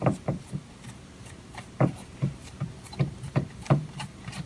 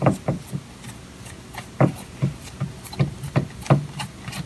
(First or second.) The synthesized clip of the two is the first